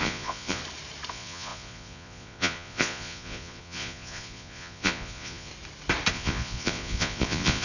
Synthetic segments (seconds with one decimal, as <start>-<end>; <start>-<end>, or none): 0.0-0.6; 1.1-5.5; 6.1-7.6